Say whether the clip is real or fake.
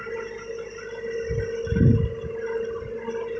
real